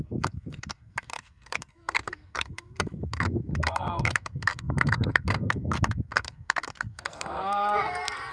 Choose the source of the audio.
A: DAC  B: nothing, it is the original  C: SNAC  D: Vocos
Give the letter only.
C